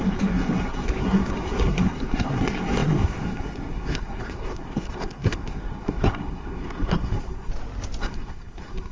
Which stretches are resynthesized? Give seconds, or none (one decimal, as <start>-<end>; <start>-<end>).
0.0-7.5; 8.0-8.9